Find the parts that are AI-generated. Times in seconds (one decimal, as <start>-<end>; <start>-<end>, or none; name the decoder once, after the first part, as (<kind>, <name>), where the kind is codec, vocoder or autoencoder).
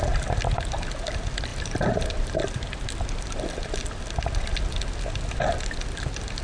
1.5-2.4 (vocoder, BigVGAN v2)